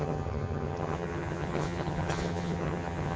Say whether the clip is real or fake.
fake